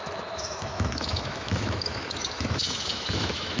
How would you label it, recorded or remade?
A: remade